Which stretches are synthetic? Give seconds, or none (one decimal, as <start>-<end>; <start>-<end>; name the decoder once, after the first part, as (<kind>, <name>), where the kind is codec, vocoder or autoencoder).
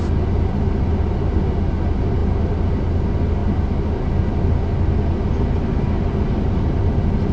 none